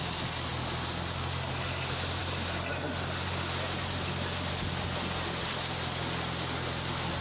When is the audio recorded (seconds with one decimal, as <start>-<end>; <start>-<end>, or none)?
0.0-7.2